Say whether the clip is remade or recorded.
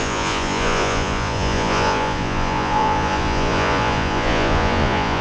remade